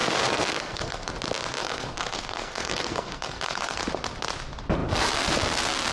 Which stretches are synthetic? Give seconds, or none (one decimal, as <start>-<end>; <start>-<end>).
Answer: 0.0-1.1; 1.6-3.8

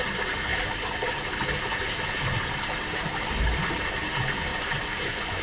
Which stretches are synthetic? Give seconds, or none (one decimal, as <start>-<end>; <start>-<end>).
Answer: 4.5-5.4

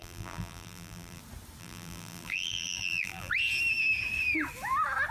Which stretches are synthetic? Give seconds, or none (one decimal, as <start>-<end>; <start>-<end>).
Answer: 0.0-1.2; 1.6-3.3

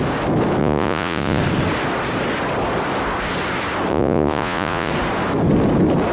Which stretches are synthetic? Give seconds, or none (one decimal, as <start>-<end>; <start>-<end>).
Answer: 0.6-1.4; 3.9-4.9

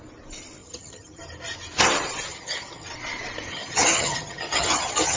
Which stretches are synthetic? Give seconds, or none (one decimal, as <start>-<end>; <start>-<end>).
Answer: 0.6-1.2; 2.3-2.9; 3.5-5.2